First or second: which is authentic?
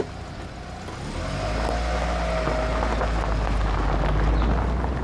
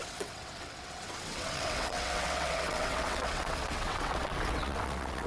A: first